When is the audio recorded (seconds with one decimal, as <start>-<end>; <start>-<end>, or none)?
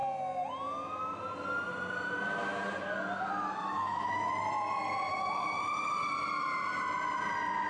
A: 0.0-3.6; 4.3-5.1; 5.6-7.7